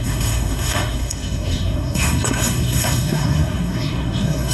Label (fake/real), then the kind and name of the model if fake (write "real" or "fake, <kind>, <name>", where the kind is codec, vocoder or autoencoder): fake, codec, SNAC